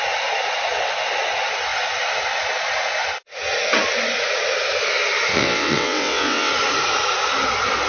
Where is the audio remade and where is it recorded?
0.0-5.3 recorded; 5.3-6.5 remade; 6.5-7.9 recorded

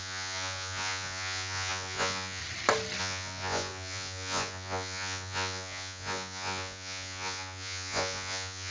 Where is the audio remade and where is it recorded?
0.0-2.4 remade; 2.4-3.0 recorded; 3.0-8.7 remade

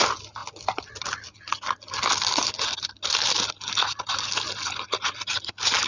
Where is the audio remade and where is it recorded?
0.0-5.9 recorded

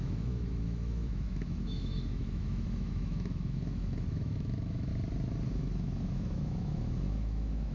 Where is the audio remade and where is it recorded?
0.0-4.9 remade; 4.9-5.5 recorded; 5.5-7.7 remade

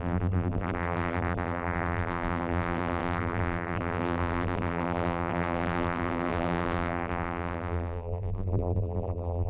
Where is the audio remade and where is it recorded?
0.0-9.5 remade

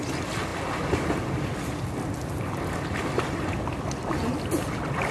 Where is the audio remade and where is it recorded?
0.0-5.1 recorded

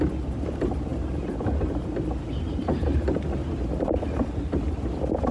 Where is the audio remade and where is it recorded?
0.0-5.3 recorded